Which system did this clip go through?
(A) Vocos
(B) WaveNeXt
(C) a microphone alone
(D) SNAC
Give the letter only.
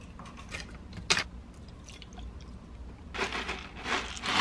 C